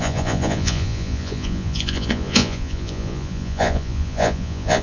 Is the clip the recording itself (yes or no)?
no